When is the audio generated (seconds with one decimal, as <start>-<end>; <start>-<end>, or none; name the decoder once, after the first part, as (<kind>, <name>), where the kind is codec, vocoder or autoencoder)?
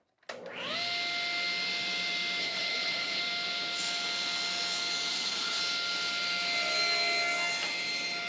2.4-3.2 (codec, HILCodec); 5.1-5.6